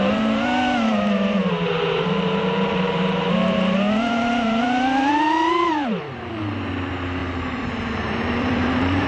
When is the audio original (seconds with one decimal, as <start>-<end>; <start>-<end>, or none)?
none

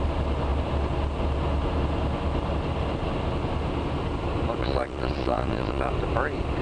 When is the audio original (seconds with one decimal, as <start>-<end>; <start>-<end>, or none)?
0.0-4.6; 5.9-6.6

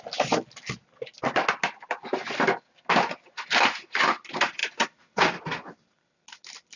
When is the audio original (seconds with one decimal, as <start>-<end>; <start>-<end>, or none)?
0.0-6.8

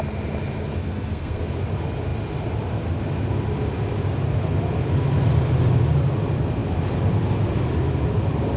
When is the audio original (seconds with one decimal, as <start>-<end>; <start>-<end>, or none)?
0.0-0.8; 1.4-8.6

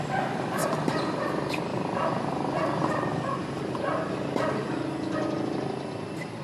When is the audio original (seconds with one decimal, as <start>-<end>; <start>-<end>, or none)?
0.0-0.6; 1.1-1.7; 4.7-6.4